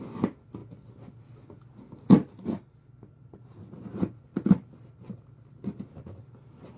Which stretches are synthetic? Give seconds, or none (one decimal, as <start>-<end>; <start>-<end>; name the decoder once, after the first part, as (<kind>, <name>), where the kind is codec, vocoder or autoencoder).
4.3-5.1 (vocoder, BigVGAN v2)